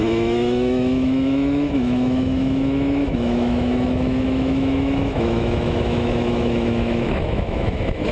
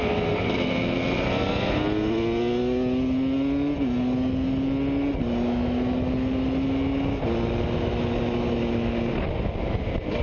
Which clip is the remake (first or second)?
first